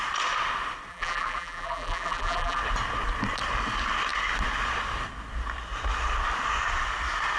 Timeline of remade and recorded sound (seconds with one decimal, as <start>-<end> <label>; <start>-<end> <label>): 0.0-0.9 recorded; 0.9-2.6 remade; 2.6-7.4 recorded

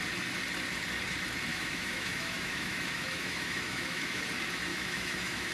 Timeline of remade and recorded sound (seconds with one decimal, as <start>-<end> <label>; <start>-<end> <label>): 0.0-1.5 recorded; 1.5-4.2 remade; 4.2-4.7 recorded; 4.7-5.5 remade

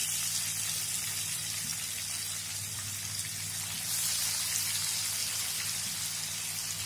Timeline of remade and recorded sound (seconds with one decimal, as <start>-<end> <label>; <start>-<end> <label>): 0.0-5.2 recorded; 5.2-6.0 remade; 6.0-6.9 recorded

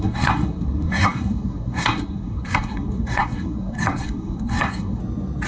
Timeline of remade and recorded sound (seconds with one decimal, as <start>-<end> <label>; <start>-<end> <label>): 0.0-5.0 remade; 5.0-5.5 recorded

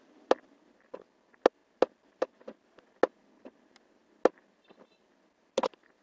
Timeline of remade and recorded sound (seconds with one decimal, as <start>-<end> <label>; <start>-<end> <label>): 0.0-6.0 recorded

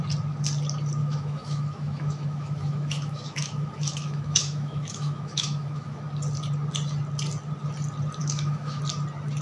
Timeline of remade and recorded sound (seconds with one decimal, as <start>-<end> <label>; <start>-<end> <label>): 0.0-1.0 recorded; 1.0-6.0 remade; 6.0-8.2 recorded; 8.2-8.8 remade; 8.8-9.4 recorded